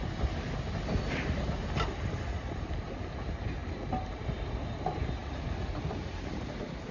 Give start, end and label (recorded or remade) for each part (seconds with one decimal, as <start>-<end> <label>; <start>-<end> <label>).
0.0-6.9 recorded